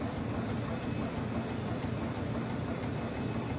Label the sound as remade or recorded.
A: recorded